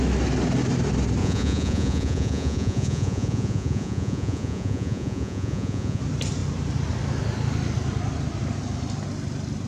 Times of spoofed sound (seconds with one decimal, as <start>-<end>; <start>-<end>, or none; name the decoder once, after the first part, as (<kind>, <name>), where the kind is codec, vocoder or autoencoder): 1.2-6.0 (vocoder, Vocos)